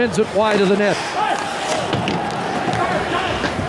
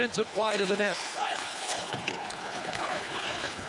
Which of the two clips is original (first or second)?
first